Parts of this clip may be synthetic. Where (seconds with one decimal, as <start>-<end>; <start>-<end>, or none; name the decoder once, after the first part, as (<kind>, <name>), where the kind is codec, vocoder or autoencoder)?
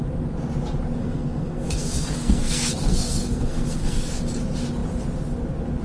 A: 1.0-4.2 (codec, SNAC)